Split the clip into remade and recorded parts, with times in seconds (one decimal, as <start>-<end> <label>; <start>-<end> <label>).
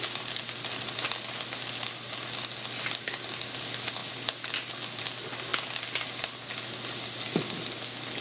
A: 0.0-8.2 recorded